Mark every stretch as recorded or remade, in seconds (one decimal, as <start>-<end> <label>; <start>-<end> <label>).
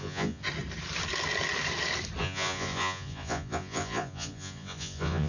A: 0.0-0.4 remade; 0.4-2.2 recorded; 2.2-5.3 remade